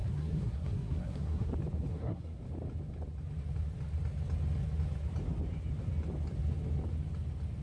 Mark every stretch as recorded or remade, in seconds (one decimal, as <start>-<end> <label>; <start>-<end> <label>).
0.0-1.5 remade; 1.5-1.9 recorded; 1.9-2.4 remade; 2.4-7.6 recorded